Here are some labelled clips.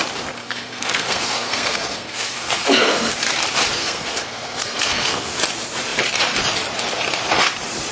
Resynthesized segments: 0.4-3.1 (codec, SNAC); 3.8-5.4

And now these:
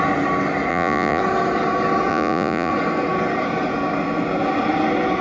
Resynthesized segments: 0.7-1.2 (vocoder, Vocos); 2.1-2.7